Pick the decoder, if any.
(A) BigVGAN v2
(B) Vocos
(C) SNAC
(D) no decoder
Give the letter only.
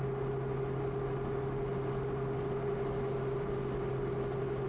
D